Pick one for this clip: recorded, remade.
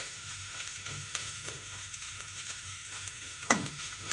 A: remade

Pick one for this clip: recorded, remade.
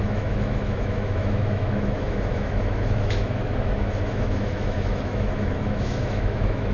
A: remade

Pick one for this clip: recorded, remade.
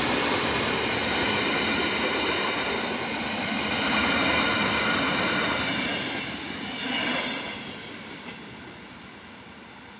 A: recorded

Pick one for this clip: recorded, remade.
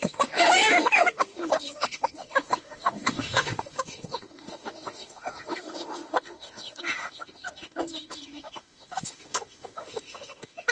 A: remade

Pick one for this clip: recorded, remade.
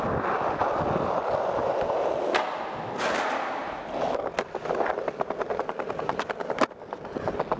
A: recorded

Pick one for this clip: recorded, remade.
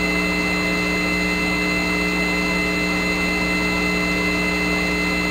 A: recorded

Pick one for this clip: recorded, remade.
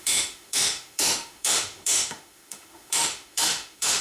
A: remade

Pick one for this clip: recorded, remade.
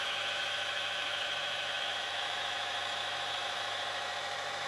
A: remade